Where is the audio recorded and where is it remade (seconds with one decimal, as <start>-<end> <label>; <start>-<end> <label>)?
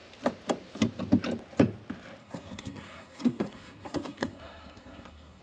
0.0-2.2 recorded; 2.2-5.4 remade